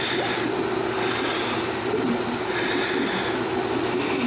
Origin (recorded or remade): recorded